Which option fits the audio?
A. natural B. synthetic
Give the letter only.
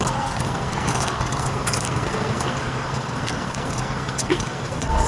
B